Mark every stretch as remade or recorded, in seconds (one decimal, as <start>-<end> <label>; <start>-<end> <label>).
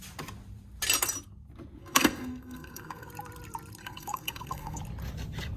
0.0-1.8 recorded; 1.8-3.1 remade; 3.1-3.8 recorded; 3.8-4.8 remade; 4.8-5.6 recorded